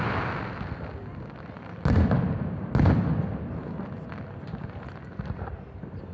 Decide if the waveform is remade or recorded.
recorded